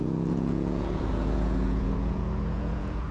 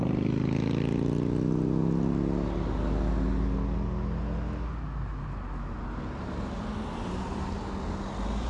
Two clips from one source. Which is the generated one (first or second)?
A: first